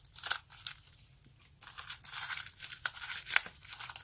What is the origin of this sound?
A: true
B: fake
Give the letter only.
A